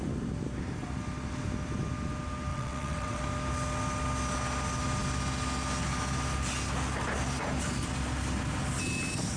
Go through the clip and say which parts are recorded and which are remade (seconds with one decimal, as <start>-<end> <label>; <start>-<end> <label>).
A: 0.0-2.5 recorded; 2.5-3.2 remade; 3.2-9.4 recorded